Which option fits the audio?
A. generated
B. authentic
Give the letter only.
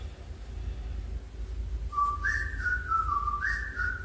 B